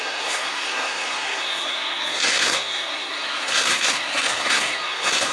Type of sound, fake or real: fake